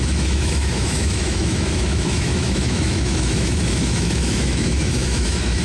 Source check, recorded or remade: remade